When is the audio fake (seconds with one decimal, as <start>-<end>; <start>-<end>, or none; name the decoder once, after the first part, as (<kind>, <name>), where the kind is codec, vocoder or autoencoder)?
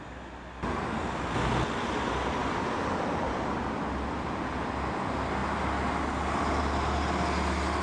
none